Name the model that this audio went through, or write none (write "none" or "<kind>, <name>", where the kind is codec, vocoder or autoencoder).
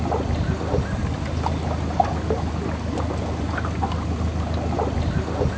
none